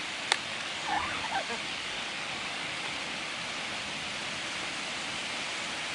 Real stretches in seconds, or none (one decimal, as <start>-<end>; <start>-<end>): 0.0-0.5; 2.9-5.9